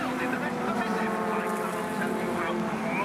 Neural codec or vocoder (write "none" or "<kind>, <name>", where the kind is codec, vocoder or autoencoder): none